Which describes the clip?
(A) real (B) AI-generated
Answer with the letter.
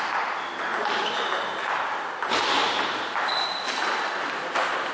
A